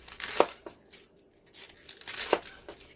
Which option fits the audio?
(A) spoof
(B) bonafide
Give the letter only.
B